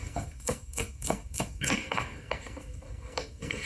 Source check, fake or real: fake